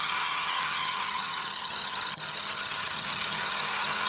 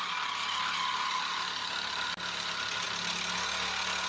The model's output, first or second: first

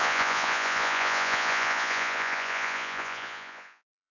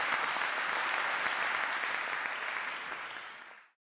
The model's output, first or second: first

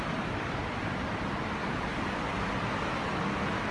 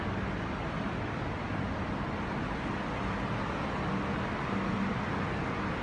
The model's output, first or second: first